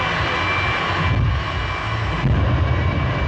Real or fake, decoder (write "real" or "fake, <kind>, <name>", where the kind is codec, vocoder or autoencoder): real